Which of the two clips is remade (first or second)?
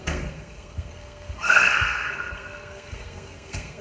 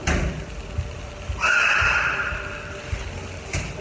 first